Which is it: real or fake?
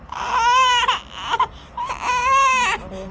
real